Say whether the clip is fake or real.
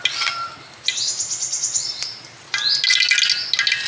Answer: real